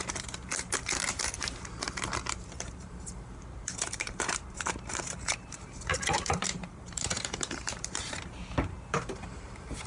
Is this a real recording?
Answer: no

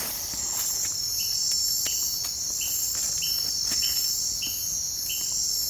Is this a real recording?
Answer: yes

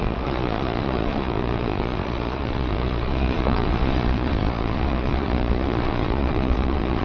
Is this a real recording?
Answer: no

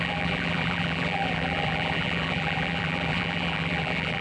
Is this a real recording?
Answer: no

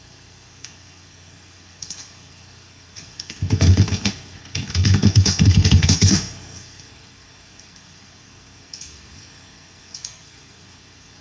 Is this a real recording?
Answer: no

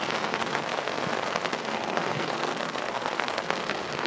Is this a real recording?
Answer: no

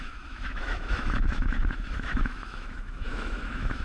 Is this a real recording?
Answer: no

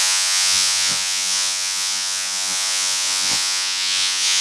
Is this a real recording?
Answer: no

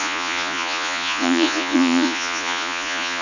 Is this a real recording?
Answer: no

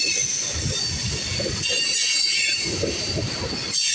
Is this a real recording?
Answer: yes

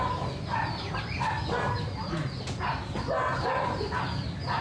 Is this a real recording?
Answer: yes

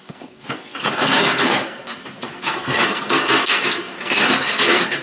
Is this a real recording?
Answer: no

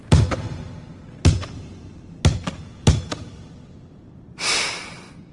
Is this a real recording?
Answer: yes